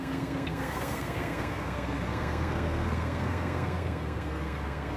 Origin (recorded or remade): remade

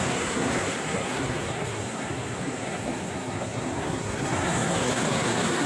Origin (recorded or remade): remade